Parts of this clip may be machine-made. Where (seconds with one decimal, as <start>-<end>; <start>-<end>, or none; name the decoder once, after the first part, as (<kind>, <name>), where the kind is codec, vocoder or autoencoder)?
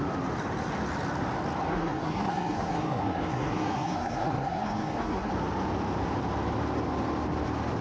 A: 1.7-5.3 (codec, SNAC)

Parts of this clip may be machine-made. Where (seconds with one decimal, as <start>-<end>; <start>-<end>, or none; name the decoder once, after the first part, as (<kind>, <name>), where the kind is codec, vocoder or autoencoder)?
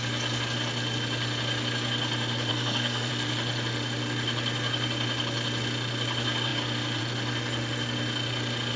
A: 2.5-3.1 (codec, SNAC)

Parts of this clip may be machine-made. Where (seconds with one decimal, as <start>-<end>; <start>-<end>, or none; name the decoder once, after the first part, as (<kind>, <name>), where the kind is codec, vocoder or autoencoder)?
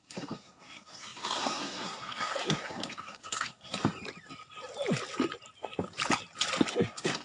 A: 0.0-3.7 (codec, SNAC); 6.7-7.2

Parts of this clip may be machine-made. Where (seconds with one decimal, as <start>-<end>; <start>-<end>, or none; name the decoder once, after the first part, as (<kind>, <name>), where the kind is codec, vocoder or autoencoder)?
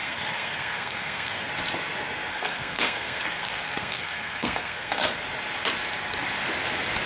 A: 0.0-1.5 (codec, SNAC); 2.3-5.2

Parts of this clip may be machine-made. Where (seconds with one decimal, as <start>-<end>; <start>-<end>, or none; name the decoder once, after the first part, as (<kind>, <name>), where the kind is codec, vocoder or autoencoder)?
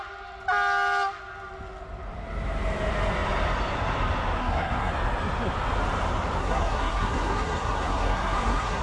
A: 4.4-4.9 (codec, SNAC); 6.4-8.8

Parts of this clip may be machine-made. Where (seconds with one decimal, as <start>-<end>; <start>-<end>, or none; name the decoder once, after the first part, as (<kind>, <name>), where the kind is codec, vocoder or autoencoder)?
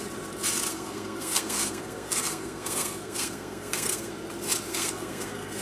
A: 0.7-4.1 (codec, SNAC); 4.7-5.6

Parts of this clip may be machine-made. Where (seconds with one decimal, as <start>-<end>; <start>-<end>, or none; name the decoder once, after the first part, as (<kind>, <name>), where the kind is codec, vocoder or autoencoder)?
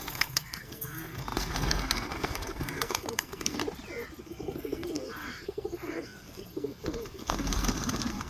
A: 0.0-3.6 (codec, SNAC); 4.2-8.3